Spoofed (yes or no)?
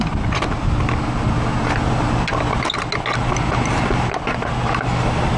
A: no